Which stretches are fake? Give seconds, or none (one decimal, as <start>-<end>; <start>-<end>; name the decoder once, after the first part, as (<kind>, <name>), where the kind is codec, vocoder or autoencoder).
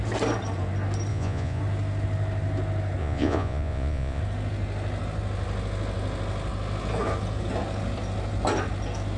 1.1-1.6 (vocoder, Vocos); 3.0-4.2